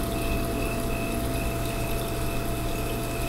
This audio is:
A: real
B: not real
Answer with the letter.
A